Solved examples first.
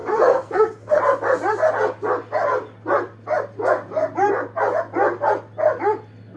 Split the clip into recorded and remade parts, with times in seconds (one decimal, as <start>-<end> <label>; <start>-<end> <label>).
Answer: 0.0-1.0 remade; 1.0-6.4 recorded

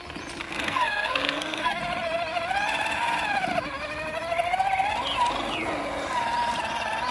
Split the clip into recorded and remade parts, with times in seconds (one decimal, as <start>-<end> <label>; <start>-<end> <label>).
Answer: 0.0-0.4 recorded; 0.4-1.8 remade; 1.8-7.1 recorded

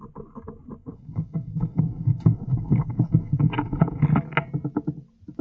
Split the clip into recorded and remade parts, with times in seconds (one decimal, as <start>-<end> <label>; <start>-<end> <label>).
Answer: 0.0-0.8 recorded; 0.8-4.0 remade; 4.0-5.4 recorded

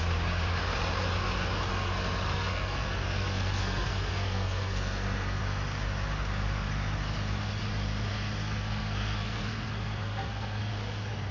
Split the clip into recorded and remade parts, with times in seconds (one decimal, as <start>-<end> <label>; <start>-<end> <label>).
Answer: 0.0-1.7 recorded; 1.7-5.4 remade; 5.4-8.1 recorded; 8.1-10.7 remade; 10.7-11.3 recorded